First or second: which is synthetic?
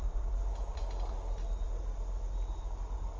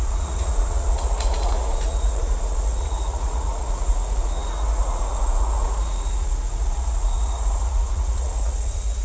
second